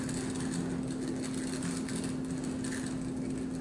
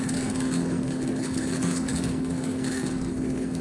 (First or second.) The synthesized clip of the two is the second